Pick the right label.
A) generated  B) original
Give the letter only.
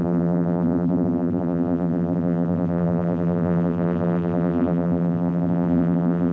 A